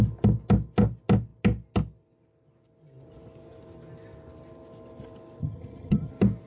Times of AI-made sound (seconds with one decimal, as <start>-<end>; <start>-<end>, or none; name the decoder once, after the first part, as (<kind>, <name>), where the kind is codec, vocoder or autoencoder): 5.4-6.1 (vocoder, HiFi-GAN)